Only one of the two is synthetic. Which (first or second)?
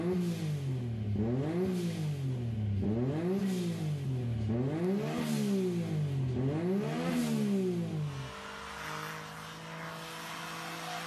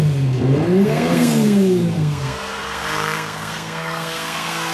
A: second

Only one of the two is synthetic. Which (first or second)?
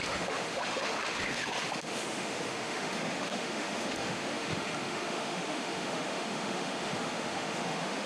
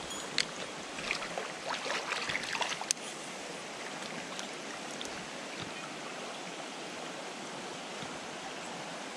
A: first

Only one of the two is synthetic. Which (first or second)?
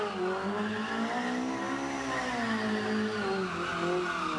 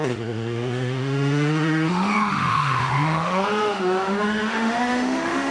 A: second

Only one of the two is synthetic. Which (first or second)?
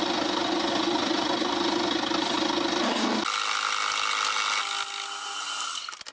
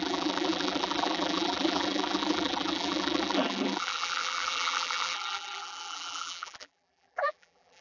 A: second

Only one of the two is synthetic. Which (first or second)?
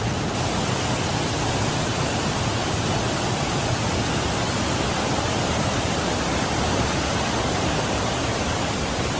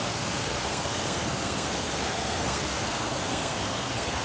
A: second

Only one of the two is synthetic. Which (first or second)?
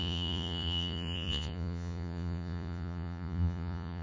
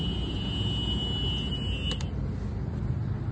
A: first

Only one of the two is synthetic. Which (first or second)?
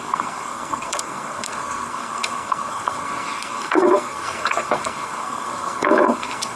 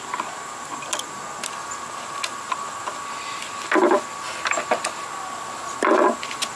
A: first